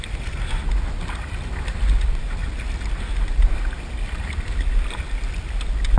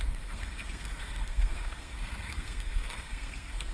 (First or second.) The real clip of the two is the first